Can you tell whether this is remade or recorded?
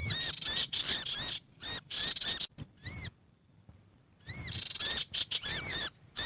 remade